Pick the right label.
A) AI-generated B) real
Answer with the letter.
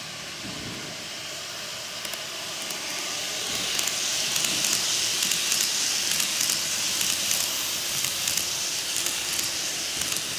B